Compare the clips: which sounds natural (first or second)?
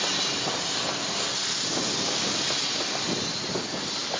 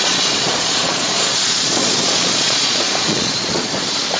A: first